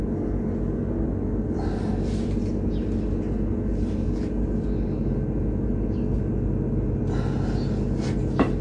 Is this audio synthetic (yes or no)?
no